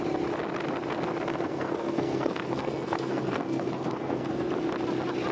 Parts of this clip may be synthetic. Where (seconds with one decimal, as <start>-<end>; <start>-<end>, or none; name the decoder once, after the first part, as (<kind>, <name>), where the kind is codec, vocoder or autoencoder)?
1.3-4.5 (codec, SNAC)